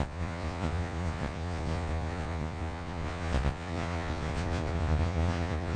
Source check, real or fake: fake